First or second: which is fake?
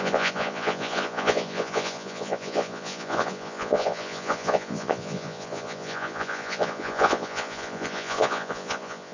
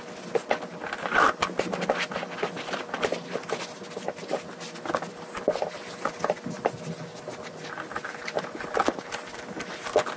first